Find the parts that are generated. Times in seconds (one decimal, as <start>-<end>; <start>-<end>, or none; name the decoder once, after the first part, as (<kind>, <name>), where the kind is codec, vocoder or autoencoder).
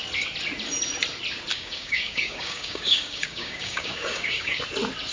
1.5-4.6 (codec, DAC)